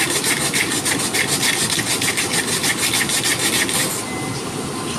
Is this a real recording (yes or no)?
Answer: yes